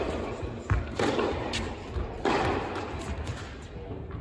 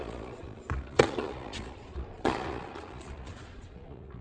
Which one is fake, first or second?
second